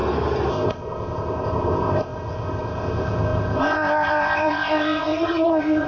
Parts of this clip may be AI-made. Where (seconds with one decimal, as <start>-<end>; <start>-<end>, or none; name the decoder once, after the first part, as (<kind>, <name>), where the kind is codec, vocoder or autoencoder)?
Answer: 0.5-5.9 (codec, ZipCodec)